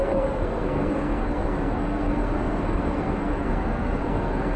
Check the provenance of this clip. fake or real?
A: fake